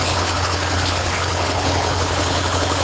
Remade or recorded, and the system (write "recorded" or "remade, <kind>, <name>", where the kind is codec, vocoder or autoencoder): remade, codec, HILCodec